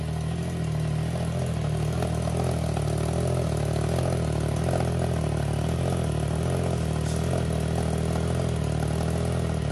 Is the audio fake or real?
real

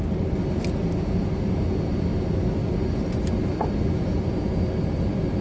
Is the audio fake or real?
real